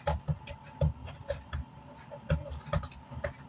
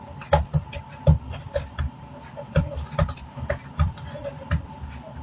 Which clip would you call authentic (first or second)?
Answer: first